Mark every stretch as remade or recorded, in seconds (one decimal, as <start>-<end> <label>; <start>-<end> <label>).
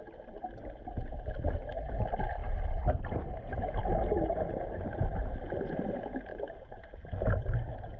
0.0-6.3 recorded; 6.3-7.4 remade; 7.4-8.0 recorded